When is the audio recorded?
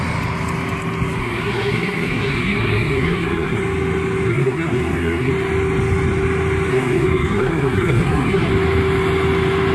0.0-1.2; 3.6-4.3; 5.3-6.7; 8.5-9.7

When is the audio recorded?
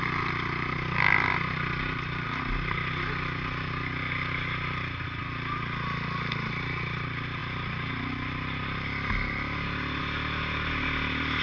0.0-11.4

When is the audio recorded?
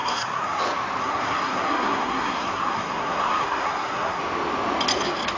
0.6-1.0; 4.2-5.4